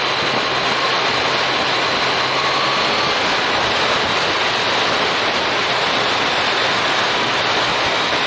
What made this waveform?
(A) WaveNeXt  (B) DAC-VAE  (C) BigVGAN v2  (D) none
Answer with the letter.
D